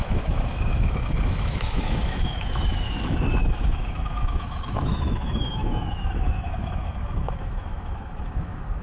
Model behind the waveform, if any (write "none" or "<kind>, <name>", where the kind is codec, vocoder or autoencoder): autoencoder, DAC-VAE